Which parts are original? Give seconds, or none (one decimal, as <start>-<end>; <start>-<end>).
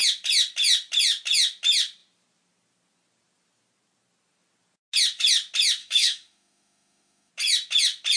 0.0-5.8; 7.3-8.2